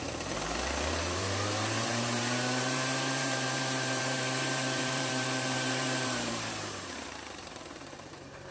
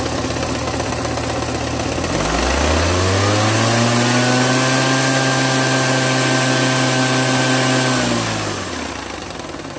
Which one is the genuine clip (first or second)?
second